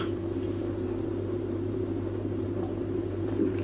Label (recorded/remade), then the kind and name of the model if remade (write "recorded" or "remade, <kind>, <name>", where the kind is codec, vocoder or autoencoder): remade, vocoder, BigVGAN v2